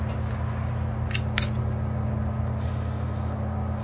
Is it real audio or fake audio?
real